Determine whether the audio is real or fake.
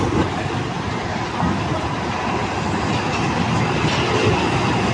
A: real